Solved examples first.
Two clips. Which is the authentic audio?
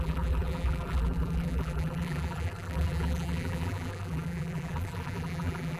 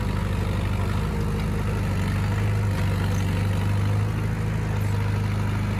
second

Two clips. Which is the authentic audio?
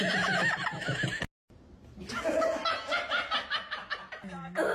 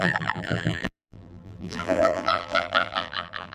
first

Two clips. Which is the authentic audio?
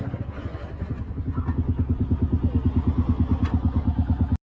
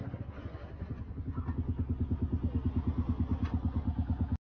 second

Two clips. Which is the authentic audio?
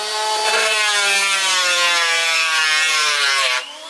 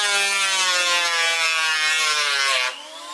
second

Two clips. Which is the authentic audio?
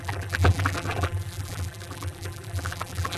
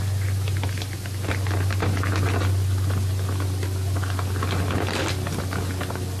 second